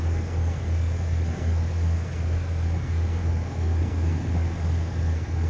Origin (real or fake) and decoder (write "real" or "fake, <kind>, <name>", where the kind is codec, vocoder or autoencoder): fake, codec, SNAC